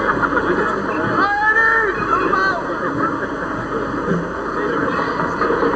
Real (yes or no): yes